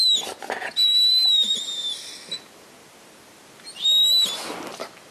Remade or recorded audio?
recorded